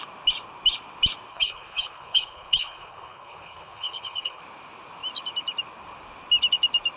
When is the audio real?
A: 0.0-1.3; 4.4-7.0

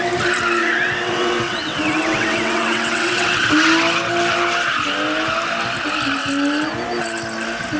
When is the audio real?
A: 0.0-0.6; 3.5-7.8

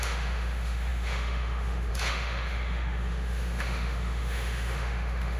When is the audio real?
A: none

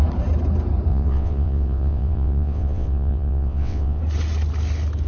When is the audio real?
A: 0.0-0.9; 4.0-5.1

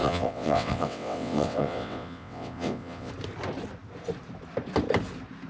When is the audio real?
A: 3.1-5.5

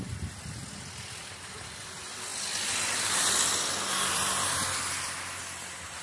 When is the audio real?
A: 0.0-6.0